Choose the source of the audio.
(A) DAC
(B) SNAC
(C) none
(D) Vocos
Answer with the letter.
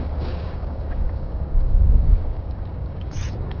A